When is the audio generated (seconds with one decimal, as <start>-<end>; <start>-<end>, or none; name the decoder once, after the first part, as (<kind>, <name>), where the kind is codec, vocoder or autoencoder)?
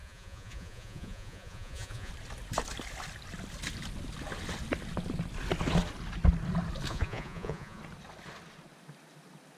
0.0-2.1 (vocoder, Vocos); 6.9-7.8